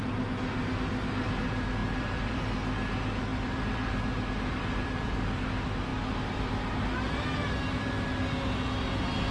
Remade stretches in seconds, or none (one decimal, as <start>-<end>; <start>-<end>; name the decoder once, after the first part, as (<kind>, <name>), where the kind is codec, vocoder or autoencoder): 1.8-2.4 (vocoder, BigVGAN v2); 3.3-5.3; 5.9-6.5